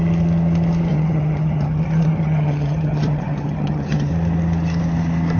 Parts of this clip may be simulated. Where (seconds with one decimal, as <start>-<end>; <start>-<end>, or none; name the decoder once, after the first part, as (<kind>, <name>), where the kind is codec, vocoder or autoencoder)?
0.9-4.1 (vocoder, HiFi-GAN)

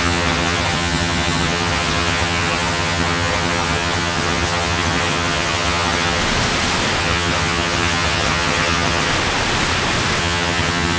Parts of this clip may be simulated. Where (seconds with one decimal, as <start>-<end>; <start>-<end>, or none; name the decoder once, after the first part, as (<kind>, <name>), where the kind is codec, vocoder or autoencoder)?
0.0-6.2 (vocoder, HiFi-GAN); 7.0-9.1; 10.2-11.0